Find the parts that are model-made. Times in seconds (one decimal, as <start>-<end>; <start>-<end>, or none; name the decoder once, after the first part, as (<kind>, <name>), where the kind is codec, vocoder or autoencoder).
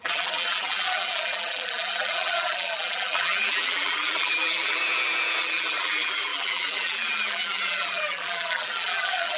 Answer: 0.0-4.8 (vocoder, BigVGAN v2); 5.4-9.4